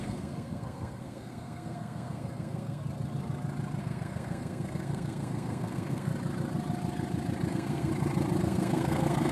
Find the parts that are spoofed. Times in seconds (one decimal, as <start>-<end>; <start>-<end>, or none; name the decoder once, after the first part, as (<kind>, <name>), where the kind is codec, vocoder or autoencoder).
0.0-2.8 (codec, SNAC); 3.8-6.1; 7.5-7.9; 8.4-9.3

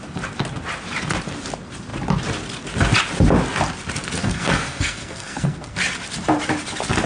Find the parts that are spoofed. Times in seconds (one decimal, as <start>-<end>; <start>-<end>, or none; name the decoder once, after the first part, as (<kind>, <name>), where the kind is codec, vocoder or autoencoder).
4.2-5.8 (codec, SNAC)

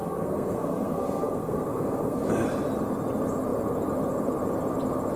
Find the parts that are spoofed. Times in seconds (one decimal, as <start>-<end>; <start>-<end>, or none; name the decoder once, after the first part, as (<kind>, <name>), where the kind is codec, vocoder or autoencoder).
0.0-2.2 (codec, SNAC)